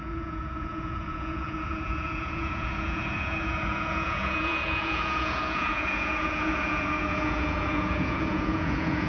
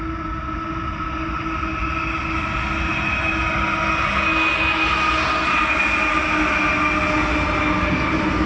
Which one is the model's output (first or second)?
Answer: first